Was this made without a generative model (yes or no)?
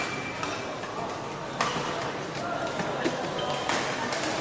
yes